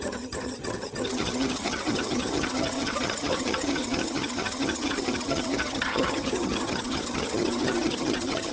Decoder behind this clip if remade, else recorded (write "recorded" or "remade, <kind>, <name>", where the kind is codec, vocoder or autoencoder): remade, vocoder, HiFi-GAN